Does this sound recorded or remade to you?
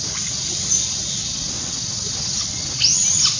recorded